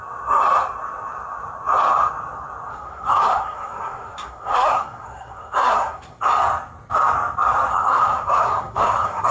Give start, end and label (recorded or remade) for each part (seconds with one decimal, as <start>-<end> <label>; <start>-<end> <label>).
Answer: 0.0-2.7 recorded; 2.7-6.2 remade; 6.2-7.7 recorded; 7.7-9.3 remade